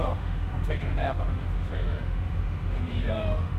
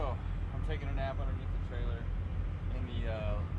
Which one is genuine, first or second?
second